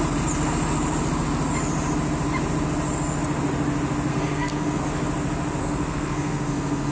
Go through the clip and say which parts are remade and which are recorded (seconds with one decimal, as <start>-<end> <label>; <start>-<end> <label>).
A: 0.0-4.1 recorded; 4.1-4.8 remade; 4.8-5.6 recorded; 5.6-6.9 remade

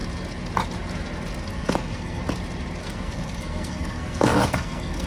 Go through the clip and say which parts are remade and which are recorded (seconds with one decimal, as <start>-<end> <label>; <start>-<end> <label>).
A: 0.0-1.4 recorded; 1.4-2.2 remade; 2.2-2.8 recorded; 2.8-5.1 remade